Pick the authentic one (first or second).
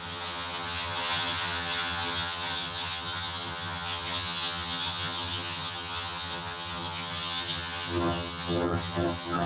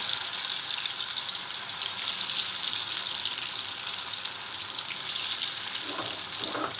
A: second